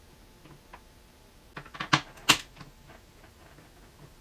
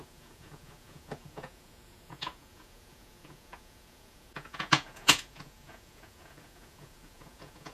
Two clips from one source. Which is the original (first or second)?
first